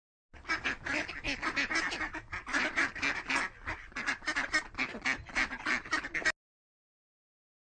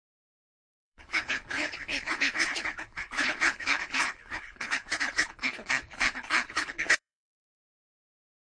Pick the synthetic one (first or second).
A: second